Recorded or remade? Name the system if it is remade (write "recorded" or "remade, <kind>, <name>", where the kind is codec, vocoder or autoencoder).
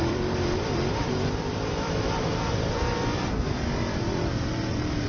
remade, vocoder, BigVGAN v2